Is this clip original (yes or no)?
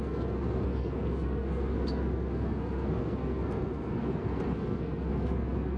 no